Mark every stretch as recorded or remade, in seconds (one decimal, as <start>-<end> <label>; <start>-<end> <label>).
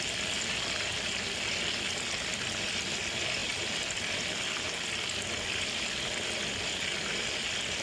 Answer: 0.0-7.8 recorded